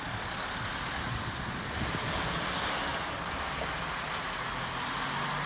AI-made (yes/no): no